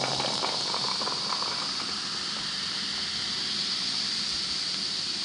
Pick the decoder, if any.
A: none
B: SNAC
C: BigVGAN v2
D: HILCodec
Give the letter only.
A